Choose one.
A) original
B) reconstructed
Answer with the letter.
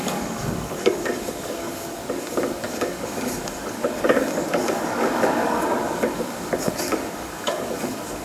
B